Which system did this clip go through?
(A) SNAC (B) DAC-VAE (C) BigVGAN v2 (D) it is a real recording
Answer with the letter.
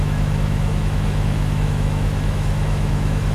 B